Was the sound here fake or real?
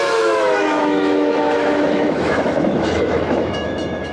fake